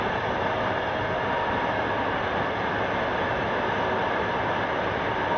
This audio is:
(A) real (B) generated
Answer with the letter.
A